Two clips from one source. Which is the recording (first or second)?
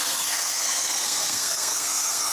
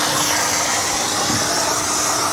second